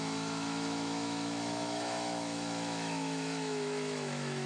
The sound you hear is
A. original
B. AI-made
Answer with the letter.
B